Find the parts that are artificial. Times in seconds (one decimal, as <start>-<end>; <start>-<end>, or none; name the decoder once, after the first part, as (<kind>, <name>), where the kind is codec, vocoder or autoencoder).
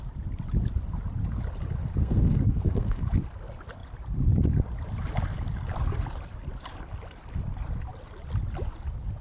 2.0-3.0 (codec, SNAC)